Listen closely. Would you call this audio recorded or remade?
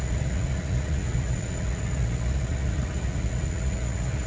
remade